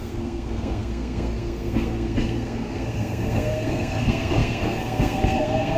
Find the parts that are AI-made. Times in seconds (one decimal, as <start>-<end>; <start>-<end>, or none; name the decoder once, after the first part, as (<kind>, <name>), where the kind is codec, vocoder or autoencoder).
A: 0.0-5.8 (codec, SNAC)